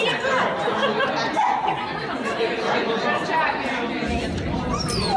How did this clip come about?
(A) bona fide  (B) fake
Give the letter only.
A